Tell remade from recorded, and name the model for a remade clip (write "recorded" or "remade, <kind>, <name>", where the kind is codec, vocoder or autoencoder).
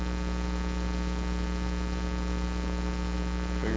recorded